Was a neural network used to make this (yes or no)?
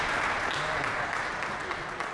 no